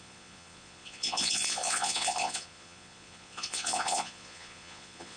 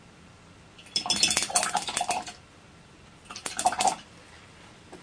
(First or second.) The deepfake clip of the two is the first